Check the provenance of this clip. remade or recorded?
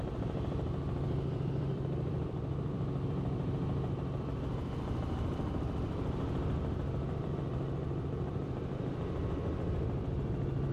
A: remade